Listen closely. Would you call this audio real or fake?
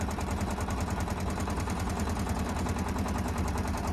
fake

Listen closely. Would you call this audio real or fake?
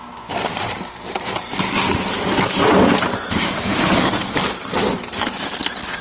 real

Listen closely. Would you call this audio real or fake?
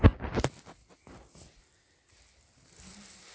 real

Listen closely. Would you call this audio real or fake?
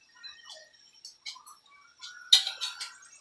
real